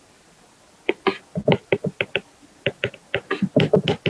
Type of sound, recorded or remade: recorded